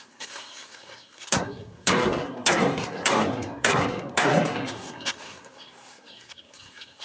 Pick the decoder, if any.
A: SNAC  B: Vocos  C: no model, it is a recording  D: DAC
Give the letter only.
A